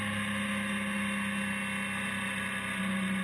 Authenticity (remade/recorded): recorded